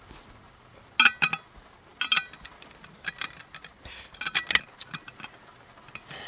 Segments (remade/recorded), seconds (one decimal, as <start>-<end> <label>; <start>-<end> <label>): 0.0-6.3 recorded